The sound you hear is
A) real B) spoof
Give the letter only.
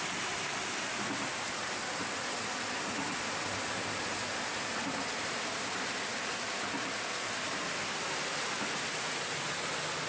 A